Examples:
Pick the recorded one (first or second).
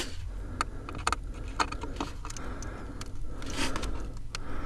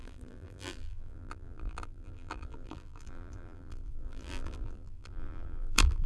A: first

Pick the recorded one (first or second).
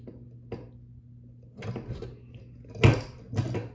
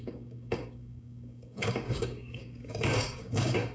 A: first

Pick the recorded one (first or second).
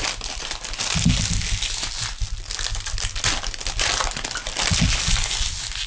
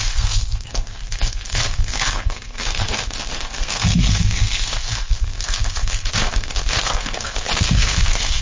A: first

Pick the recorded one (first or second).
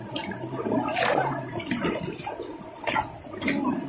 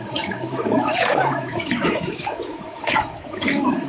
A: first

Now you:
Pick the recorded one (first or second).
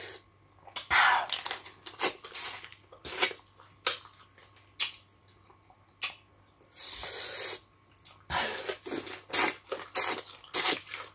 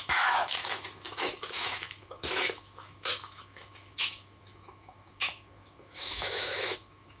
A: first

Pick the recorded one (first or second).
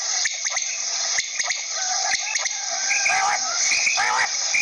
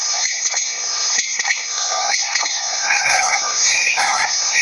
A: first